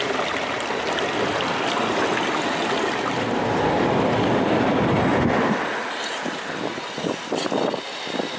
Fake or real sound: real